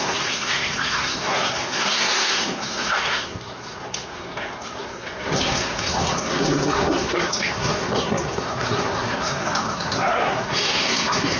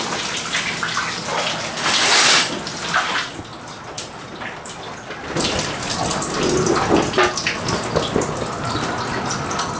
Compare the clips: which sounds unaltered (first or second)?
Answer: second